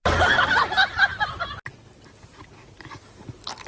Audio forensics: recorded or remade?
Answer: recorded